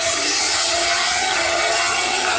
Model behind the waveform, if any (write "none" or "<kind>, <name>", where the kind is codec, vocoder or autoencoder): vocoder, HiFi-GAN